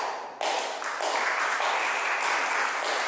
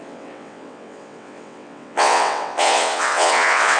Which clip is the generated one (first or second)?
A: second